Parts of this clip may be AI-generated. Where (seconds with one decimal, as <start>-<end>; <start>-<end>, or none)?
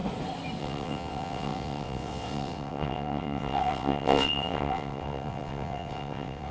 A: 0.6-6.5